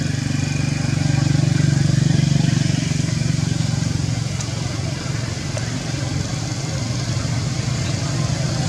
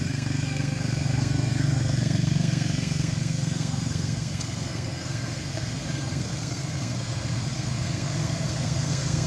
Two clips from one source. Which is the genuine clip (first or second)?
first